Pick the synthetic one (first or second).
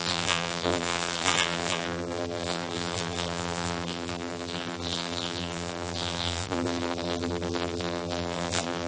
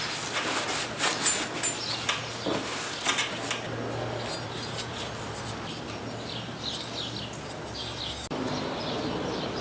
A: first